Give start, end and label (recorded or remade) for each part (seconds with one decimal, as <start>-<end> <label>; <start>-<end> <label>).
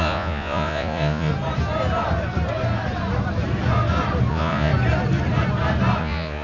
0.0-1.3 remade; 1.3-4.3 recorded; 4.3-4.7 remade; 4.7-6.0 recorded; 6.0-6.4 remade